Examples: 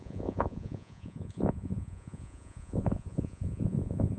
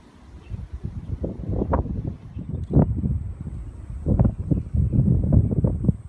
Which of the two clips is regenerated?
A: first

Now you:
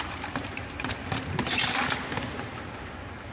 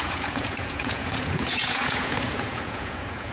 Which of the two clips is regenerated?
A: second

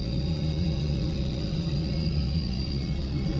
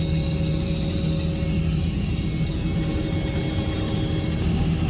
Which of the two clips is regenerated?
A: first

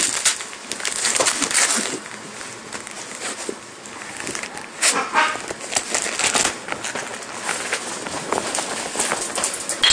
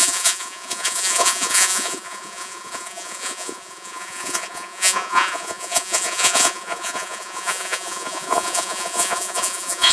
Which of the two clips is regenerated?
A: second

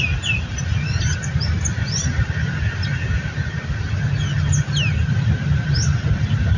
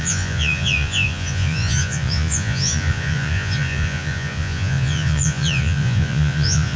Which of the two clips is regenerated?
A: second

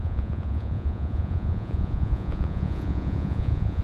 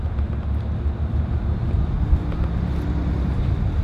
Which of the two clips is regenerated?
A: first